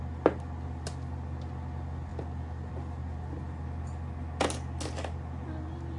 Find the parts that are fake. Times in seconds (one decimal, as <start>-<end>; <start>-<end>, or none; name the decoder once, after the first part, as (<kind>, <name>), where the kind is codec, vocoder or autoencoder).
none